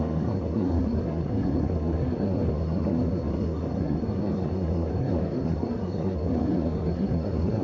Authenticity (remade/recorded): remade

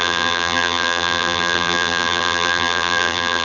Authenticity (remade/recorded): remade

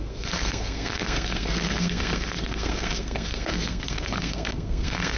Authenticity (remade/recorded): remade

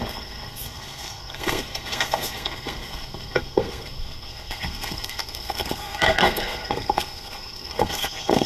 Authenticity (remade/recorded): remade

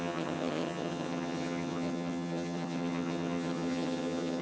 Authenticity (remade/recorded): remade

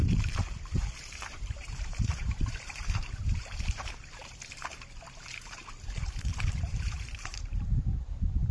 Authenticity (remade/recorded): remade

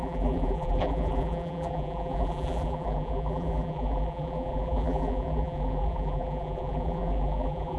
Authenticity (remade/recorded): remade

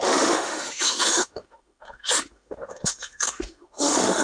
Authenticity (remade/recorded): remade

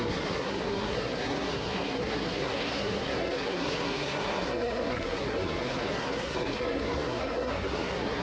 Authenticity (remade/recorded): remade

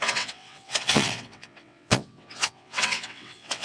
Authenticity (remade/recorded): remade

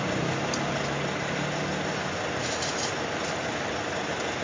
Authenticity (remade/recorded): recorded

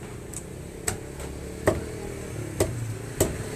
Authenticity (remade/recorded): recorded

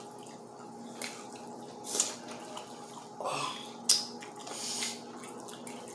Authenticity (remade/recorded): recorded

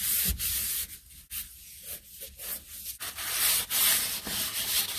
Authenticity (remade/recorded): recorded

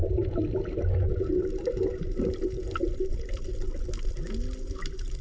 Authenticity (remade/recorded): recorded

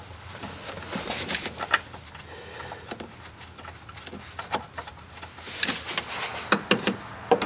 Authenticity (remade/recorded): recorded